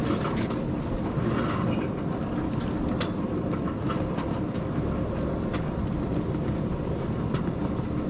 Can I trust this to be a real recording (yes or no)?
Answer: yes